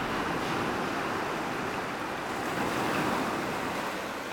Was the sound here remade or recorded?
recorded